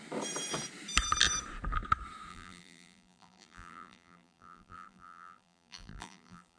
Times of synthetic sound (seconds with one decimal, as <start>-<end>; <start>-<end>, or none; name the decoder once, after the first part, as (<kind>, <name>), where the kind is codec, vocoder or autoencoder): 2.3-6.6 (vocoder, BigVGAN v2)